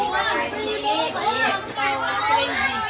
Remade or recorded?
recorded